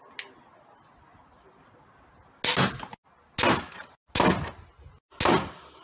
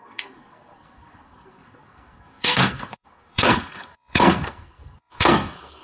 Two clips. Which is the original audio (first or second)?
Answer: first